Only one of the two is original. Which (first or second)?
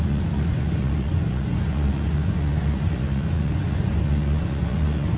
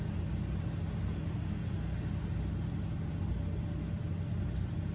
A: second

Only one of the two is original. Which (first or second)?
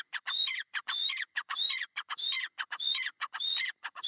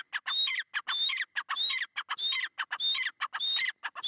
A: second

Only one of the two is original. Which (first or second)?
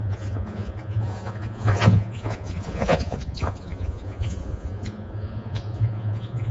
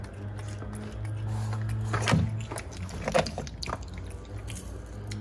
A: second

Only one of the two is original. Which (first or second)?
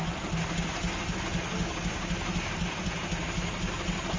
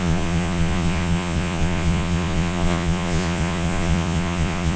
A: first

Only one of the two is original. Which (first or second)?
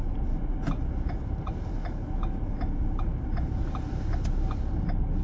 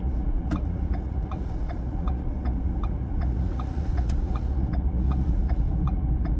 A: first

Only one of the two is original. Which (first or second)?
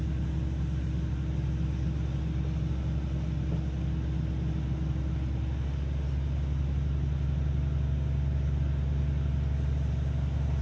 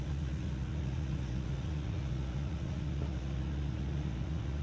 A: first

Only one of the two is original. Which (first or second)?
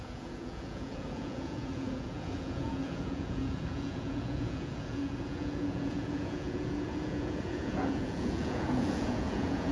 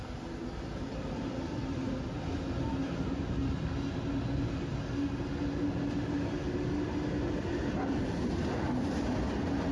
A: second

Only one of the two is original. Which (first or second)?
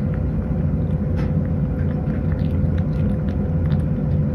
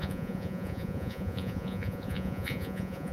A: first